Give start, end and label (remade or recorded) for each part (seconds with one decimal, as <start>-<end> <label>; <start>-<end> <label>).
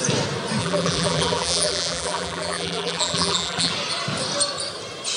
0.0-0.6 recorded; 0.6-3.7 remade; 3.7-5.2 recorded